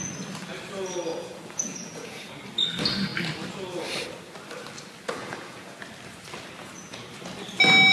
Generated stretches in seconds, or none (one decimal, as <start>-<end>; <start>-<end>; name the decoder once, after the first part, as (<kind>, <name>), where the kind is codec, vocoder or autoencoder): 1.1-2.3 (vocoder, Vocos); 5.2-5.8; 6.6-7.1